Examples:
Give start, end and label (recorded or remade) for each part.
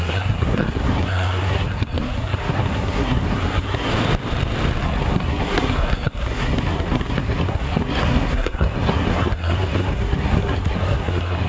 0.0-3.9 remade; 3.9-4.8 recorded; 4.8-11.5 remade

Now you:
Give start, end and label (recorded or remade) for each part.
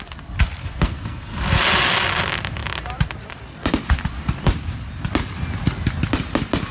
0.0-0.6 recorded; 0.6-1.4 remade; 1.4-6.7 recorded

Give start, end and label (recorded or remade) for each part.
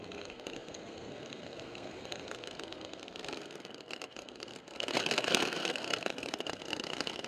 0.0-7.3 remade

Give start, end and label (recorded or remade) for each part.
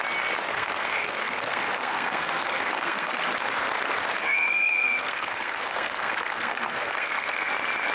0.0-0.5 recorded; 0.5-3.2 remade; 3.2-4.2 recorded; 4.2-7.5 remade; 7.5-7.9 recorded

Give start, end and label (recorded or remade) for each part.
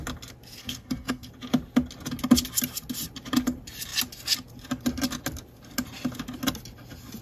0.0-0.6 recorded; 0.6-1.3 remade; 1.3-7.2 recorded